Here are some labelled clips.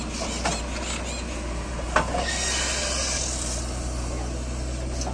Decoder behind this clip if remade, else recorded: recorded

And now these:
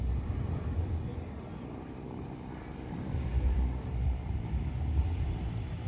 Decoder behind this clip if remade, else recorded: remade, vocoder, BigVGAN v2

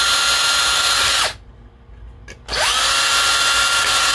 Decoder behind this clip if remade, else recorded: recorded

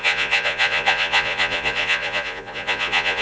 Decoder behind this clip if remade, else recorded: remade, vocoder, Vocos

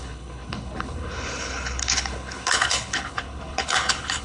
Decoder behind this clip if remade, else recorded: remade, codec, HILCodec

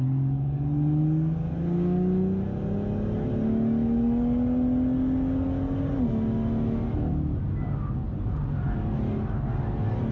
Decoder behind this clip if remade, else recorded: recorded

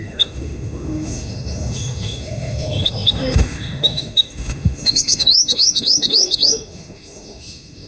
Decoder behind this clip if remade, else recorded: remade, autoencoder, DAC-VAE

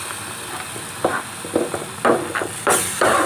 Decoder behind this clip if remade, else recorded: recorded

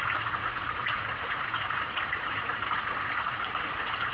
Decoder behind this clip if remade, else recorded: remade, vocoder, Vocos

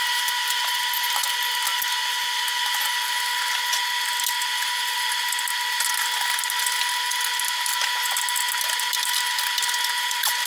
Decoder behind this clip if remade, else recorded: recorded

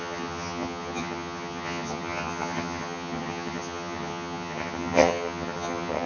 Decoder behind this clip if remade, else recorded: remade, vocoder, HiFi-GAN